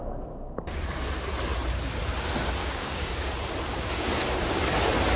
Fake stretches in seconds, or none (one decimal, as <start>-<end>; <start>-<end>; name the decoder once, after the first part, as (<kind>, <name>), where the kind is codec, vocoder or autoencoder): 2.6-3.3 (codec, DAC); 3.7-4.6